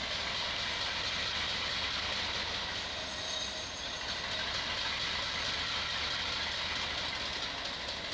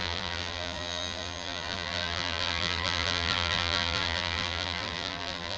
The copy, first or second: second